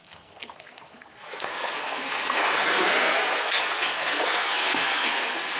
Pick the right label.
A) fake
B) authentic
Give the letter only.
A